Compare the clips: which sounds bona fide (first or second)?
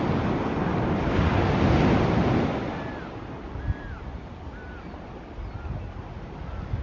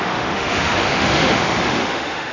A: first